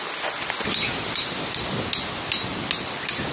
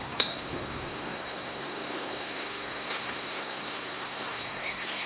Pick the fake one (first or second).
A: second